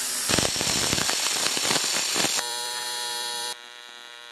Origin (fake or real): fake